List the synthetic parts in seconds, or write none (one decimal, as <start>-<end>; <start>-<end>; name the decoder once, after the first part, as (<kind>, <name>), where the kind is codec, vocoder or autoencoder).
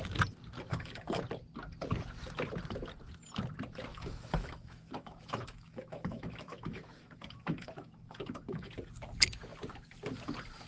0.7-1.2 (autoencoder, DAC-VAE); 3.9-8.7